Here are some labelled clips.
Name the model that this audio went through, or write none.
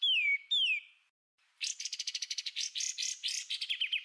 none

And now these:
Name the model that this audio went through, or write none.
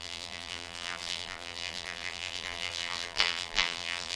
vocoder, BigVGAN v2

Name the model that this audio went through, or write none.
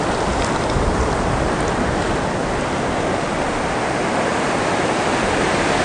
none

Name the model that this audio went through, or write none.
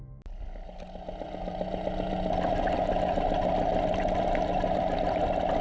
none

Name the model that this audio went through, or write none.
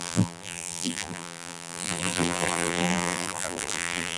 vocoder, BigVGAN v2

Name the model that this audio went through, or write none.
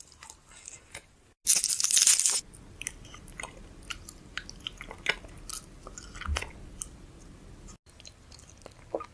none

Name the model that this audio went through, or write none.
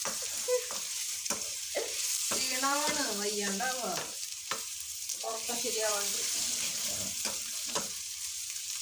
vocoder, BigVGAN v2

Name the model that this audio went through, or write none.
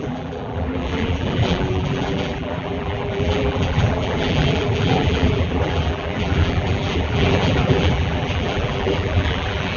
vocoder, BigVGAN v2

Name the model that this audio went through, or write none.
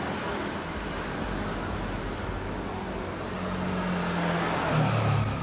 none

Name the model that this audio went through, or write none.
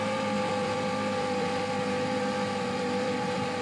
vocoder, BigVGAN v2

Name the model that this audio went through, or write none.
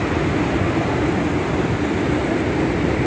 none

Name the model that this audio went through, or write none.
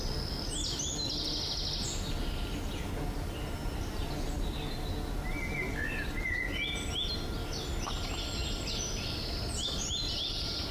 none